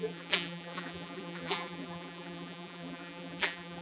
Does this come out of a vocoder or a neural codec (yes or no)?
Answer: yes